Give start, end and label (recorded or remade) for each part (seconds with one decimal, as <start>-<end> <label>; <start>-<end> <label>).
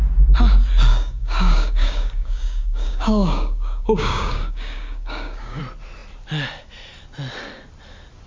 0.0-0.9 recorded; 0.9-5.6 remade; 5.6-8.3 recorded